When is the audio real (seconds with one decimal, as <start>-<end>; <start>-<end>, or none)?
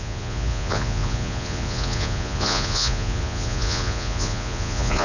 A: none